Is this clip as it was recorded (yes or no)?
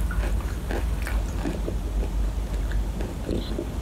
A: yes